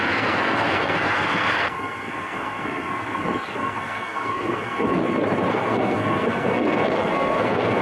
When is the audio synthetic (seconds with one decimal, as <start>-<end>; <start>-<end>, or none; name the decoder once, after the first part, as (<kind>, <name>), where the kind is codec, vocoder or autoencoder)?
0.0-5.0 (codec, SNAC); 5.5-7.8

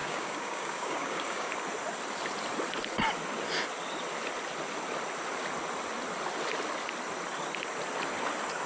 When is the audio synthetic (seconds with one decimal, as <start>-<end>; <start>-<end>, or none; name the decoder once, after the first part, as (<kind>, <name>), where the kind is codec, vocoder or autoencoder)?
0.0-1.5 (codec, DAC)

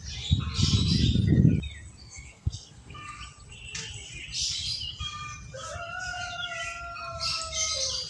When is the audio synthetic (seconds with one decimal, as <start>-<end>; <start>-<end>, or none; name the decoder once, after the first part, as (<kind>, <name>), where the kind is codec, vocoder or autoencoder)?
2.0-3.2 (codec, SNAC)

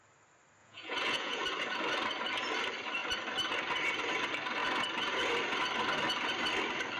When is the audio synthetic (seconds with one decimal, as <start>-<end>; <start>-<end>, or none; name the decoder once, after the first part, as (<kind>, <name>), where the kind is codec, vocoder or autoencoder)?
0.6-1.4 (vocoder, Vocos)